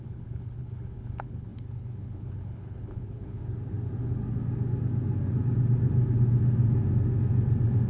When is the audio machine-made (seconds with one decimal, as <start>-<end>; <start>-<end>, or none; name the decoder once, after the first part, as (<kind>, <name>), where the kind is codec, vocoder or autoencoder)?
0.0-3.4 (codec, HILCodec)